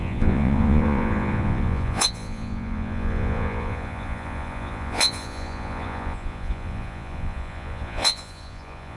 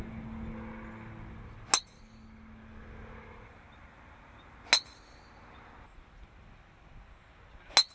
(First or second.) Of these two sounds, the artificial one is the first